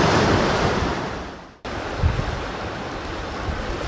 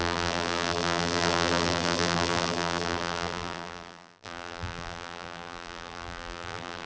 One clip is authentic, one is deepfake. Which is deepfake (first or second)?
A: second